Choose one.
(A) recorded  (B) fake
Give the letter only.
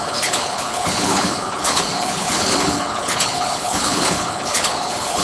B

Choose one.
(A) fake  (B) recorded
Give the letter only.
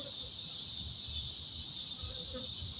B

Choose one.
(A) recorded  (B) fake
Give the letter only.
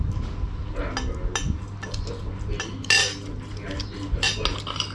A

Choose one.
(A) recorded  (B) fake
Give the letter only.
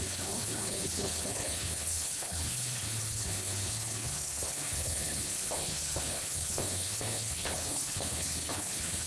B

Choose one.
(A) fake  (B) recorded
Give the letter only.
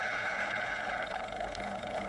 A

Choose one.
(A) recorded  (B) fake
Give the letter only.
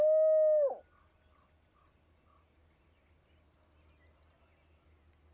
A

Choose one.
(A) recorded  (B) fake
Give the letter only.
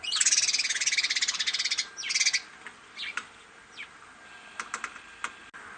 A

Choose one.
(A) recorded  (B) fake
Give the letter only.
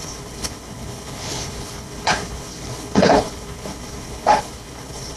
B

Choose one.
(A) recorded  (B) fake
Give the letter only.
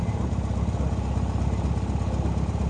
A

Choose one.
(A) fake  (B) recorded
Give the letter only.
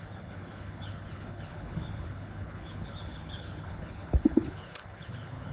A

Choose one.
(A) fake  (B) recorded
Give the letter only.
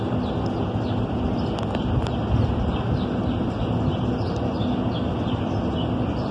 B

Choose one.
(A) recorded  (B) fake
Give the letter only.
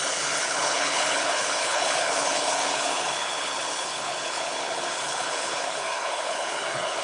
B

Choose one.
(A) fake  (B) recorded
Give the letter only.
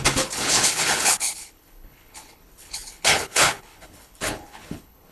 A